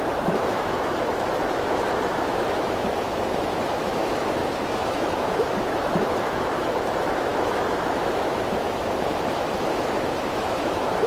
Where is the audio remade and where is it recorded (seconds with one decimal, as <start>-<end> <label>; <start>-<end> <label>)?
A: 0.0-11.1 remade